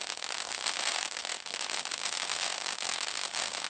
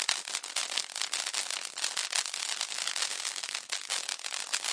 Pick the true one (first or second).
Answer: second